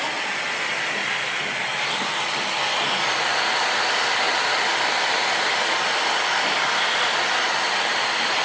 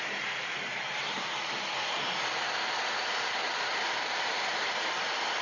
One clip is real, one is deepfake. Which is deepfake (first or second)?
second